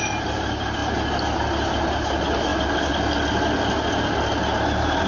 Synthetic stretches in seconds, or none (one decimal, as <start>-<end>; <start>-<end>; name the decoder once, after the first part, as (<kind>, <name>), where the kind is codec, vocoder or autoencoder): none